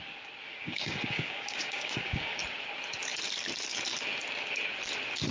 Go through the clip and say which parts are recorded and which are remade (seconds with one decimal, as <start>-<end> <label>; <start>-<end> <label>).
0.0-0.5 recorded; 0.5-2.4 remade; 2.4-5.3 recorded